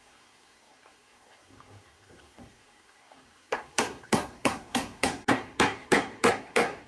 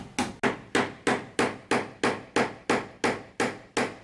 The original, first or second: second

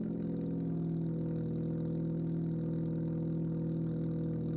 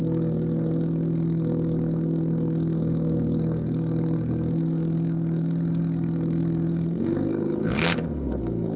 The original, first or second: first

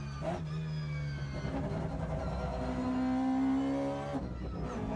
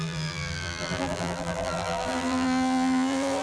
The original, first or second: first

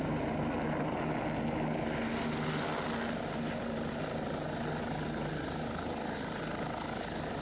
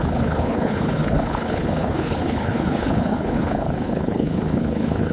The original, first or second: first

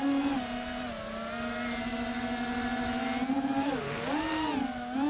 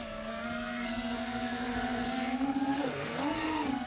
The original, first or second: first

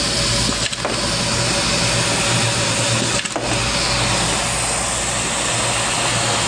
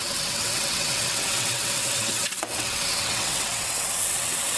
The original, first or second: first